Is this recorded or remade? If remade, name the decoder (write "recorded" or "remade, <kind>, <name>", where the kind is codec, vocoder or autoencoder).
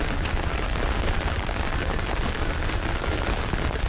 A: recorded